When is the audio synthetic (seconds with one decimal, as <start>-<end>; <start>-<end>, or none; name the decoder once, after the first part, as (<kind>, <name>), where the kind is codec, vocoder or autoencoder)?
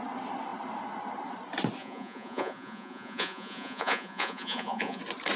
1.8-5.0 (vocoder, Vocos)